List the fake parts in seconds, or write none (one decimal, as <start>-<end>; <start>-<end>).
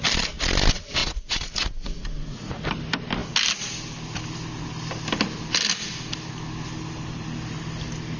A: 1.0-2.6